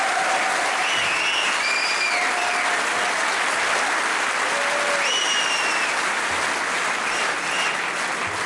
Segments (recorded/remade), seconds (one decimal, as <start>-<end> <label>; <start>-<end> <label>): 0.0-8.5 recorded